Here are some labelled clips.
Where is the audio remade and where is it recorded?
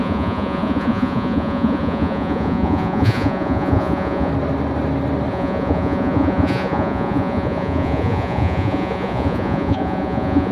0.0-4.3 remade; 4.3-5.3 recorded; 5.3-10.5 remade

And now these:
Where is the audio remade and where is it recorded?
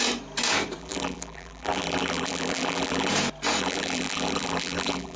0.0-0.8 recorded; 0.8-3.1 remade; 3.1-3.6 recorded; 3.6-5.2 remade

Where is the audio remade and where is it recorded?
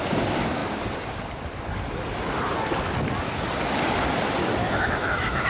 0.0-4.6 recorded; 4.6-5.5 remade